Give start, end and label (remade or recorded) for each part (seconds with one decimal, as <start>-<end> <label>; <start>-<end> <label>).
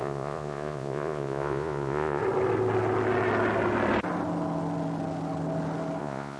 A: 0.0-2.2 remade; 2.2-6.0 recorded; 6.0-6.4 remade